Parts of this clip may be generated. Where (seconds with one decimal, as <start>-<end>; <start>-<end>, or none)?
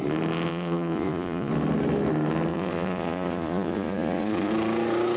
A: 0.5-1.5; 2.5-4.5